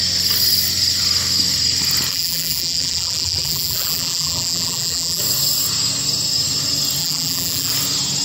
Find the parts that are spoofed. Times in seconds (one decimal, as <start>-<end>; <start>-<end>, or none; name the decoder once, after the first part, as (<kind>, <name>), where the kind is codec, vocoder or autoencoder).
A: 2.1-5.2 (vocoder, BigVGAN v2); 7.0-7.7